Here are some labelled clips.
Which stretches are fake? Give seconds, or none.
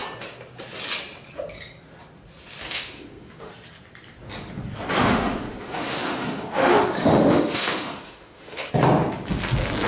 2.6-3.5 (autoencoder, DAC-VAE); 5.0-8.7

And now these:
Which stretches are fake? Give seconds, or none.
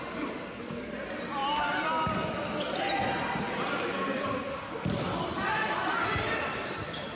none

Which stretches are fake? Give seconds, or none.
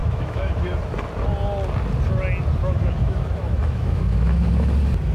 0.0-0.8 (autoencoder, DAC-VAE); 2.6-4.5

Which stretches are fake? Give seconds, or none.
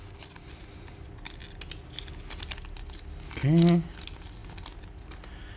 none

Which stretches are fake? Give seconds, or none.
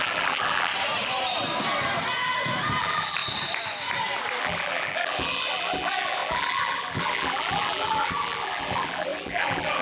0.0-0.7 (vocoder, BigVGAN v2); 2.8-3.2; 4.4-9.8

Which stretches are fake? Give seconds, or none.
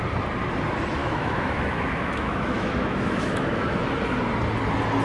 1.0-3.9 (autoencoder, DAC-VAE)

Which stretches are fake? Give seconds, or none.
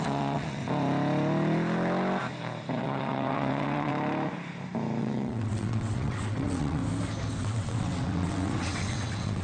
0.0-0.6 (vocoder, WaveNeXt); 2.8-3.9; 5.0-6.8; 7.4-9.4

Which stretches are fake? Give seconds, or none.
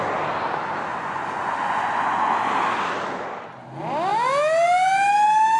0.9-2.5 (vocoder, Vocos)